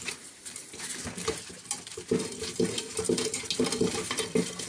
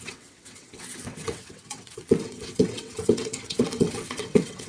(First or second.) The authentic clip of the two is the first